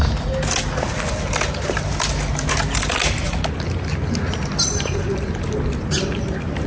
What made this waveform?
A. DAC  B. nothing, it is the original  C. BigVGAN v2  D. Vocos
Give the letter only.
B